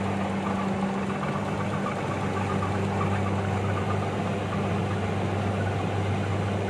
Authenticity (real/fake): real